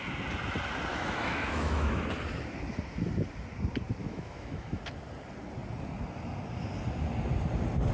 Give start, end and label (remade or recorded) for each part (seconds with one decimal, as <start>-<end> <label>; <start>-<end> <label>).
0.0-0.9 recorded; 0.9-2.0 remade; 2.0-4.0 recorded; 4.0-4.8 remade; 4.8-7.9 recorded